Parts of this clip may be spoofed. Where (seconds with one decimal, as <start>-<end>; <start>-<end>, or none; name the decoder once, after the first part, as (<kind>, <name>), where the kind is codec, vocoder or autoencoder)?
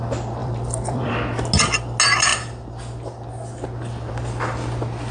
0.4-1.1 (vocoder, BigVGAN v2)